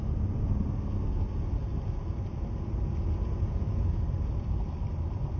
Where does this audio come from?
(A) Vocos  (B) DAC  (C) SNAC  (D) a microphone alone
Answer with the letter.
D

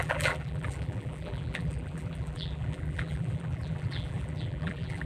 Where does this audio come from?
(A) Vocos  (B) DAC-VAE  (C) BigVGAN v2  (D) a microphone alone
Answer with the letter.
C